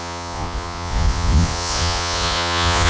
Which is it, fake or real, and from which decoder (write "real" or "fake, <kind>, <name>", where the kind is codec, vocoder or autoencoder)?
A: fake, vocoder, Vocos